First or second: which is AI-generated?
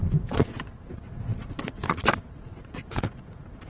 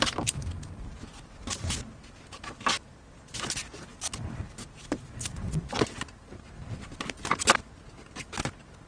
first